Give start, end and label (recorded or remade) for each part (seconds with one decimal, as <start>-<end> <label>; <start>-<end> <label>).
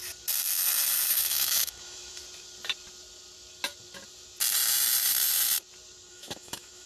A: 0.0-1.1 recorded; 1.1-2.2 remade; 2.2-6.1 recorded; 6.1-6.9 remade